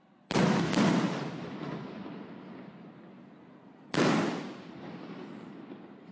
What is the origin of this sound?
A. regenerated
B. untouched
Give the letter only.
B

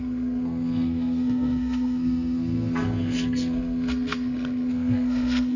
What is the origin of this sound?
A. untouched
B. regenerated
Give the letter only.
B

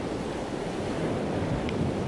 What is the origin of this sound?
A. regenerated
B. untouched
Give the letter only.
B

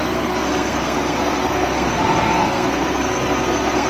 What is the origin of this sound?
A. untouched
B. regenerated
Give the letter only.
B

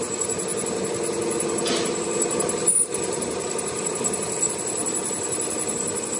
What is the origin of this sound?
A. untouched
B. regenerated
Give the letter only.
A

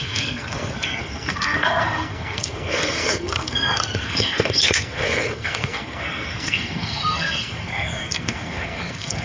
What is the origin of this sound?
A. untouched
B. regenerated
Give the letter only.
B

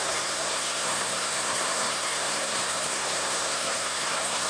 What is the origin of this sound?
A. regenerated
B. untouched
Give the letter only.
A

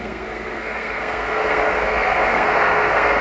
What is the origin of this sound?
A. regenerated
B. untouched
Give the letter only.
A